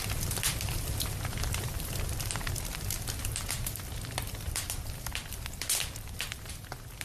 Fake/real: real